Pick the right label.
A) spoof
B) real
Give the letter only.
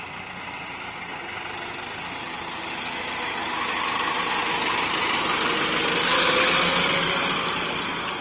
B